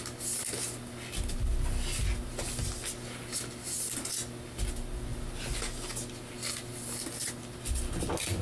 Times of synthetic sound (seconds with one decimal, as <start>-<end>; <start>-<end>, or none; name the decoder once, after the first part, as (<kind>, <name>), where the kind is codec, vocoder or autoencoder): none